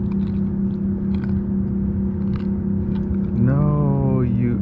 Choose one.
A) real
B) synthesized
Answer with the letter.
A